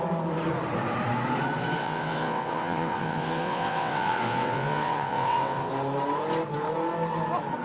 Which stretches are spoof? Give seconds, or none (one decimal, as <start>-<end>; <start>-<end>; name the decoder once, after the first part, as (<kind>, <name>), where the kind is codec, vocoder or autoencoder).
1.8-5.7 (vocoder, WaveNeXt)